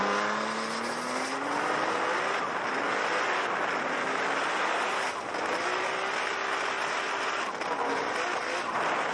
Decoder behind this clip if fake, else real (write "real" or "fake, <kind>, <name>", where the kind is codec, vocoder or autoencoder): real